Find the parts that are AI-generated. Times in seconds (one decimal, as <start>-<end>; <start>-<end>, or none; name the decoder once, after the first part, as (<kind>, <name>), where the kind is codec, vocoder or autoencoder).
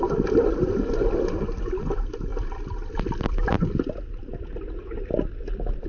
none